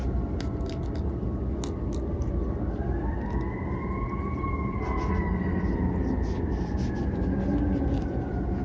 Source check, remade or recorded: recorded